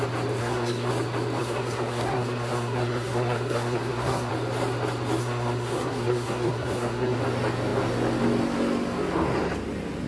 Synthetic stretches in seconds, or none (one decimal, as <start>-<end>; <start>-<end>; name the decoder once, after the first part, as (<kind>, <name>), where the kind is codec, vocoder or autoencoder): 0.4-0.9 (codec, SNAC); 1.4-4.3; 5.2-7.2